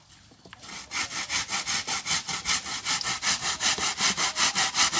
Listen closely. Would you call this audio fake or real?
real